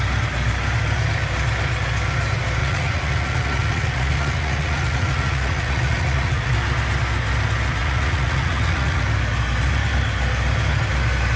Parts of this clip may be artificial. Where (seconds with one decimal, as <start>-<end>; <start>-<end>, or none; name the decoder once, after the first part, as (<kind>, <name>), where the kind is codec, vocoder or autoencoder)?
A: 2.6-6.5 (vocoder, Vocos); 7.8-9.0